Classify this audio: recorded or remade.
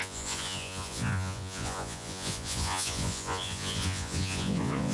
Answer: remade